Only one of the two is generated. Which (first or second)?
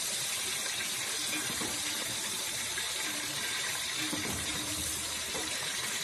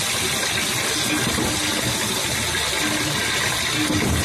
first